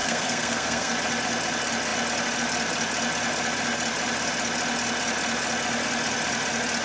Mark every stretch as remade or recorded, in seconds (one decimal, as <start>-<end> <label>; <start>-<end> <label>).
0.0-0.9 remade; 0.9-6.8 recorded